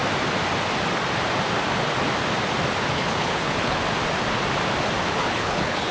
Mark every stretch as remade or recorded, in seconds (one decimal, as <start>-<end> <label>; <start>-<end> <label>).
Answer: 0.0-2.9 recorded; 2.9-3.8 remade; 3.8-5.0 recorded; 5.0-5.9 remade

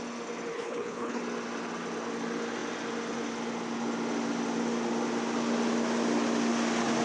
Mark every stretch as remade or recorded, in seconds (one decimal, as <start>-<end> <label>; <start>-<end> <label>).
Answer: 0.0-0.5 recorded; 0.5-1.2 remade; 1.2-7.0 recorded

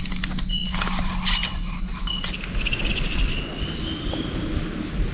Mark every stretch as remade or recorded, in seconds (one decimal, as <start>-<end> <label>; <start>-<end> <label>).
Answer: 0.0-5.1 recorded

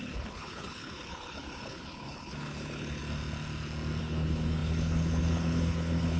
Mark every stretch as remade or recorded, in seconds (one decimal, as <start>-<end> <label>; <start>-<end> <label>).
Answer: 0.0-3.0 remade; 3.0-4.0 recorded; 4.0-6.2 remade

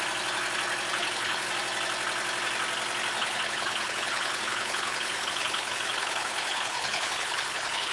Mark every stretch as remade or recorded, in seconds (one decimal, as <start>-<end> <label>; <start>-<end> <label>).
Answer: 0.0-1.0 recorded; 1.0-1.5 remade; 1.5-3.2 recorded; 3.2-7.9 remade

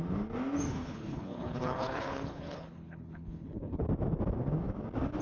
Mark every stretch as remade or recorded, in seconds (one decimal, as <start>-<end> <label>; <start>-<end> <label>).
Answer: 0.0-0.7 recorded; 0.7-3.8 remade; 3.8-5.2 recorded

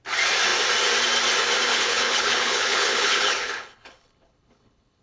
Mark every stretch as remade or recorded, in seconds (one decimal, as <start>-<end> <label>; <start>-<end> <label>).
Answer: 0.0-1.7 recorded; 1.7-5.0 remade